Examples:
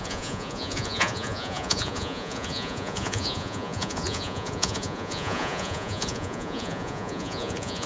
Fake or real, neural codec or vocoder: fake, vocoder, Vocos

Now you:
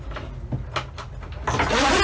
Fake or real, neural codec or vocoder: real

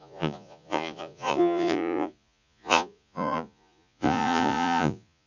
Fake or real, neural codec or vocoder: fake, vocoder, Vocos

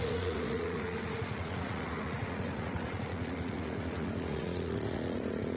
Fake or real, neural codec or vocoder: fake, vocoder, Vocos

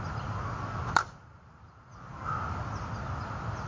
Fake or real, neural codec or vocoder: real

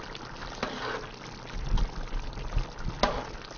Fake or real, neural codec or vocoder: real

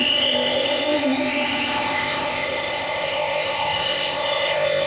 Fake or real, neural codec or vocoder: fake, codec, ZipCodec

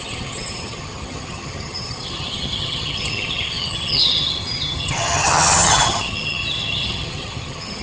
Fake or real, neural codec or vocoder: fake, vocoder, HiFi-GAN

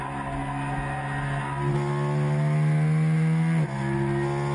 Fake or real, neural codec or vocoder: real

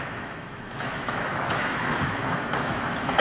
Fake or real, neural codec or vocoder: fake, autoencoder, DAC-VAE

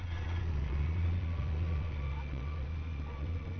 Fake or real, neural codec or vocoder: fake, vocoder, Vocos